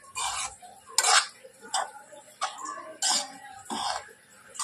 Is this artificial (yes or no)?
no